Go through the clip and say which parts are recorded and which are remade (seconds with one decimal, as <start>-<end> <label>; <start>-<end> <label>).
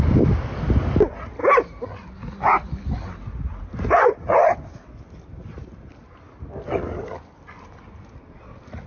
0.0-8.9 recorded